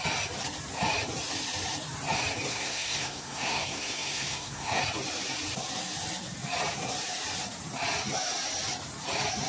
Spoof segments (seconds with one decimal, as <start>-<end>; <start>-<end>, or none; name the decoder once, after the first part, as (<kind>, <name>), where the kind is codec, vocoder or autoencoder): 2.5-4.8 (codec, SNAC)